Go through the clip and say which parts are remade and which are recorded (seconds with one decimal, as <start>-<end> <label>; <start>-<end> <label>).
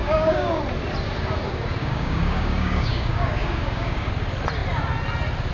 0.0-0.6 remade; 0.6-1.8 recorded; 1.8-4.1 remade; 4.1-5.5 recorded